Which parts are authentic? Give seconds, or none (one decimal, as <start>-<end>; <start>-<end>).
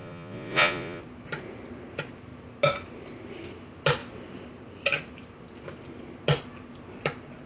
1.0-7.5